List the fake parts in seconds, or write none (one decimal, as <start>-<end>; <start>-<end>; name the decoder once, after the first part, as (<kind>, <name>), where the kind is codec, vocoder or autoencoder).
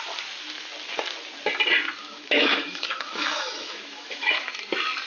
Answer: 2.0-4.6 (autoencoder, DAC-VAE)